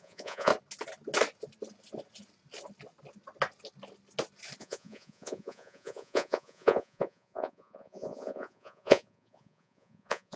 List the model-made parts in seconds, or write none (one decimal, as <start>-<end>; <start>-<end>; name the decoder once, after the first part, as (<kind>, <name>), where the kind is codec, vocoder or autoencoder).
0.0-0.5 (vocoder, Vocos); 4.6-10.4